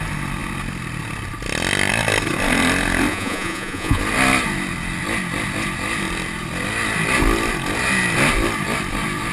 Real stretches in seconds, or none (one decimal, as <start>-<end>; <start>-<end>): 0.0-3.1; 4.0-9.3